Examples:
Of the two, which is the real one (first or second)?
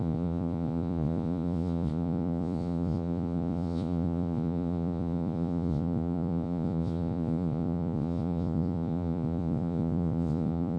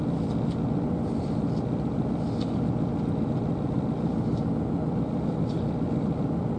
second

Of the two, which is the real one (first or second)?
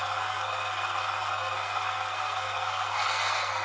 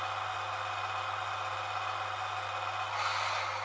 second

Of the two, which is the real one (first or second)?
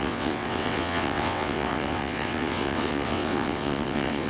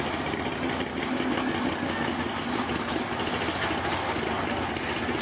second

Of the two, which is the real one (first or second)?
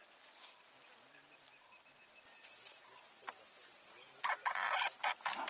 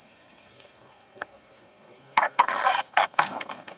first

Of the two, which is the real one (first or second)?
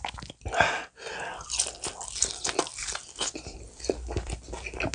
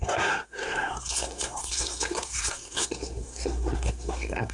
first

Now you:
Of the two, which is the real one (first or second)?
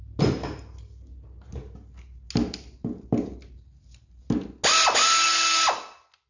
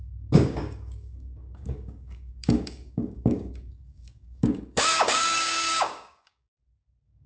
first